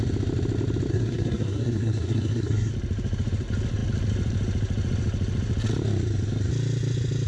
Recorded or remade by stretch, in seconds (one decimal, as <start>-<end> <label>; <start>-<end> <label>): 0.0-0.9 recorded; 0.9-2.7 remade; 2.7-7.3 recorded